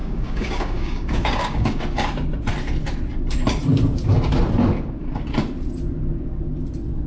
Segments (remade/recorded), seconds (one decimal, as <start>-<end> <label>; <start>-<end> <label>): 0.0-1.8 remade; 1.8-7.1 recorded